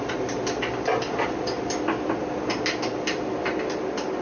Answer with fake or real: real